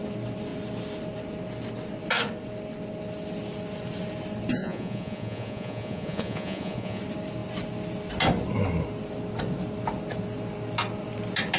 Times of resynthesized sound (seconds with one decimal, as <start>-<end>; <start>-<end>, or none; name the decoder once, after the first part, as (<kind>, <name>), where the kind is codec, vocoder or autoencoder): 4.6-7.0 (vocoder, Vocos)